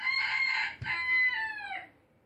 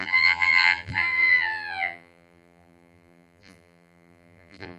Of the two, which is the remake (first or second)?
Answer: second